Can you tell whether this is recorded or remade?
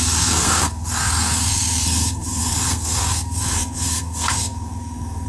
remade